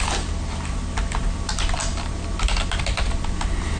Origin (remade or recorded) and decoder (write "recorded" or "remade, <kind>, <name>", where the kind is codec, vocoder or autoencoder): recorded